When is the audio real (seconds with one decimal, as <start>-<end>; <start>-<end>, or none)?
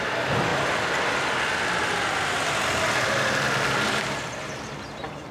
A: 0.0-5.3